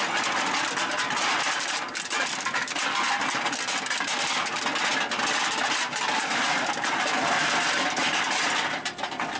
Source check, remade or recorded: recorded